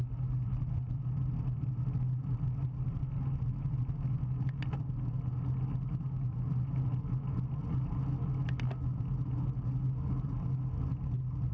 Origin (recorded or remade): recorded